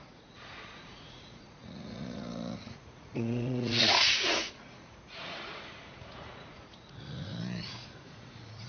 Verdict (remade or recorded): remade